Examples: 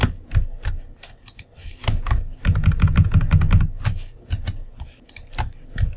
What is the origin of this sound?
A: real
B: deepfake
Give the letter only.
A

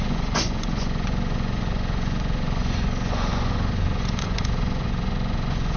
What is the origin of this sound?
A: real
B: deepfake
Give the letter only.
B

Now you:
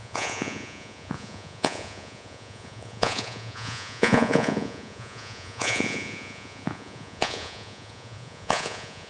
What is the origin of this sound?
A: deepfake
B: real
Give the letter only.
A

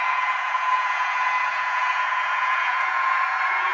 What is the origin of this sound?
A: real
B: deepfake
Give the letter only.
B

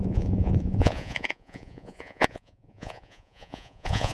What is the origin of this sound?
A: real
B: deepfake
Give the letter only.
B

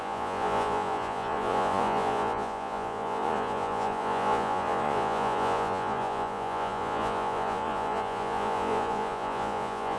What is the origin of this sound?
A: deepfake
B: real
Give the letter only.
A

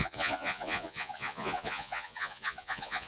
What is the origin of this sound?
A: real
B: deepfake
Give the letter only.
B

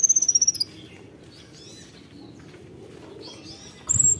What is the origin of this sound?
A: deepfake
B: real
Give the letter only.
B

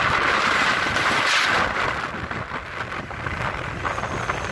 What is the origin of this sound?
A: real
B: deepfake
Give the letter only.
A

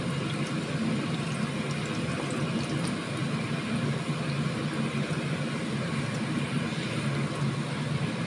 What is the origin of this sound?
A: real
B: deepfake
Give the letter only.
A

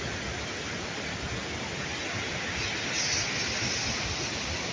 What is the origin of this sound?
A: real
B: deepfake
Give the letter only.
A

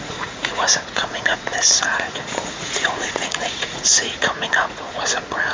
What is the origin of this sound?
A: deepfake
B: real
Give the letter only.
A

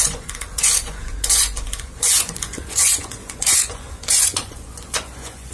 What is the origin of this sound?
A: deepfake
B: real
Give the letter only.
A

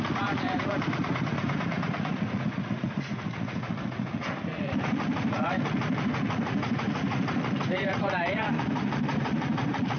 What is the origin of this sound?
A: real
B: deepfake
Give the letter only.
B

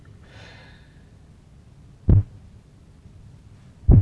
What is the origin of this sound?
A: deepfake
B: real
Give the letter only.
B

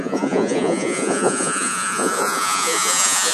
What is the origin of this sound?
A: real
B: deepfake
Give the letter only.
B